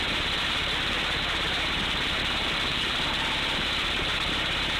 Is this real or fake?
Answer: fake